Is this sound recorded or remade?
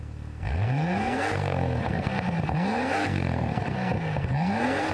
remade